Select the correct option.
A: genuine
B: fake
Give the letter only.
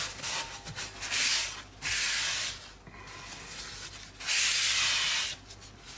A